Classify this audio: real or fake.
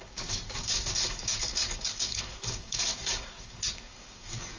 fake